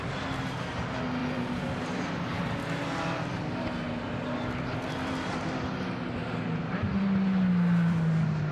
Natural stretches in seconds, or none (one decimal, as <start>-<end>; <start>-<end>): 0.0-6.2; 7.0-8.5